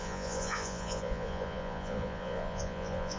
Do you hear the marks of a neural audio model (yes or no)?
yes